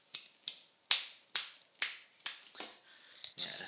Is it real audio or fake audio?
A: real